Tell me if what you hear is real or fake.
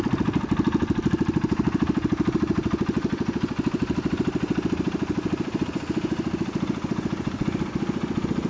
real